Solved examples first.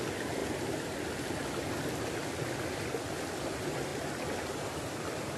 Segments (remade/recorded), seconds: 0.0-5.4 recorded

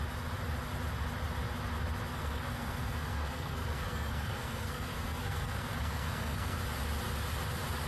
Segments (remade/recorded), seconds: 0.0-2.1 recorded; 2.1-6.6 remade; 6.6-7.9 recorded

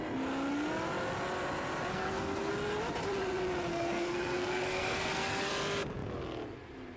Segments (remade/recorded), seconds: 0.0-1.9 recorded; 1.9-2.5 remade; 2.5-3.7 recorded; 3.7-5.5 remade; 5.5-7.0 recorded

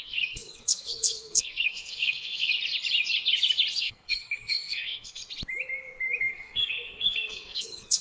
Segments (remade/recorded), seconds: 0.0-2.5 remade; 2.5-3.8 recorded; 3.8-5.2 remade; 5.2-6.2 recorded; 6.2-8.0 remade